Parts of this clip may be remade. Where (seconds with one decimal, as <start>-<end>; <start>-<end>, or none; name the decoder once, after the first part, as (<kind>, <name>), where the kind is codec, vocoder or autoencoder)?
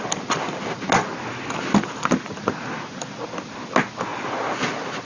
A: none